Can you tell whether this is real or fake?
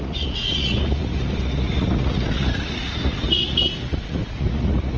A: fake